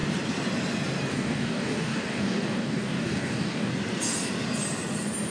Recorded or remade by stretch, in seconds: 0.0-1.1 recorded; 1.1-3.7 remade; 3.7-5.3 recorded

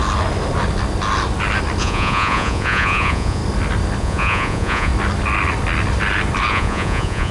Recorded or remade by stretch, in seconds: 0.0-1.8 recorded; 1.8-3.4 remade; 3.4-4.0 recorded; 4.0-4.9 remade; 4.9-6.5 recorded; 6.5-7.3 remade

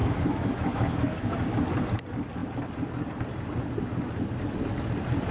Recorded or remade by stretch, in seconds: 0.0-1.3 remade; 1.3-5.3 recorded

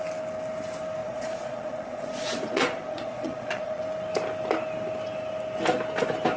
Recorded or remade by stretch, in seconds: 0.0-1.0 recorded; 1.0-3.8 remade; 3.8-6.4 recorded